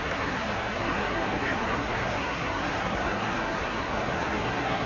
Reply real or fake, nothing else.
fake